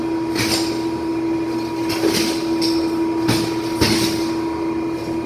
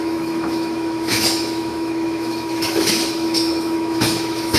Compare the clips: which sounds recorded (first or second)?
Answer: first